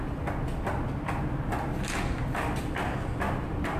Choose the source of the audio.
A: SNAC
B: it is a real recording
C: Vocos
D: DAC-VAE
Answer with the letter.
B